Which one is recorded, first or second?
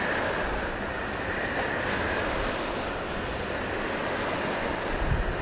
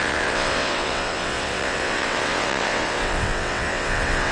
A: first